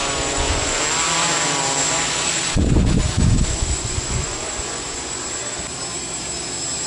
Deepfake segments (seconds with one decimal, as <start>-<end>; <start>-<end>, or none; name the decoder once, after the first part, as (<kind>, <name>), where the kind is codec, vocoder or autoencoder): 0.0-0.8 (vocoder, Vocos); 1.8-5.2